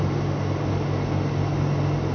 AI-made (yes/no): no